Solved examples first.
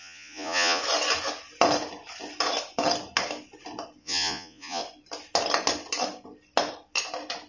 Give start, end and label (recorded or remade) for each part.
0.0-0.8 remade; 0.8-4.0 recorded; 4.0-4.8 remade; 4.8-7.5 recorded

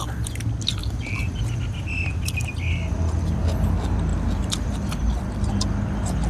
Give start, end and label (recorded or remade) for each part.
0.0-0.8 recorded; 0.8-1.6 remade; 1.6-4.1 recorded; 4.1-5.5 remade; 5.5-6.3 recorded